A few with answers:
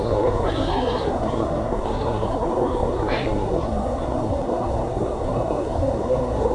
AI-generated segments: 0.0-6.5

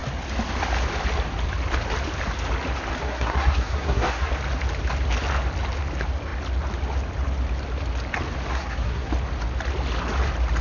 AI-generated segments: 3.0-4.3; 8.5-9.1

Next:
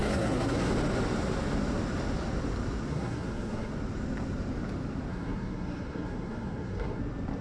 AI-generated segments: 0.0-0.7; 2.9-3.7; 5.1-7.0

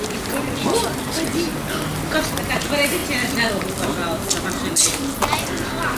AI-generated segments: none

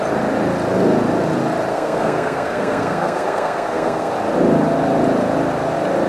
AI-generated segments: 1.7-4.1

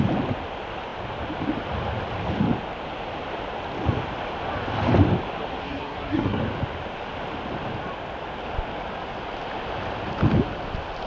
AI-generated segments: 5.6-6.4

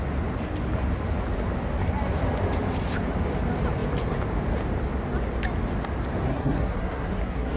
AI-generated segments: 6.3-7.6

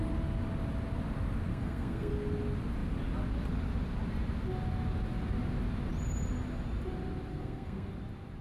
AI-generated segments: 1.5-2.1; 7.3-7.9